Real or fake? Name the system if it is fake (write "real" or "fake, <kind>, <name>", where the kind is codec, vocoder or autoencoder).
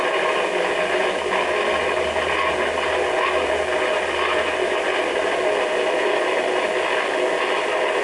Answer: real